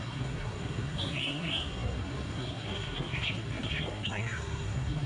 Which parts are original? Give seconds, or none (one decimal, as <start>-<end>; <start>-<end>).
none